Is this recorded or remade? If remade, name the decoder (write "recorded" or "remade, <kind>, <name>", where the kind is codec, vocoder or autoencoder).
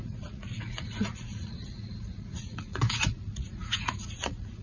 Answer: remade, vocoder, Vocos